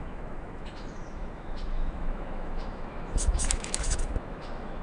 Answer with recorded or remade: remade